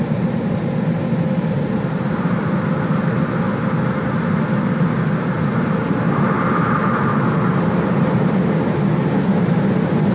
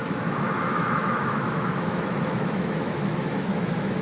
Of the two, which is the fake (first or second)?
second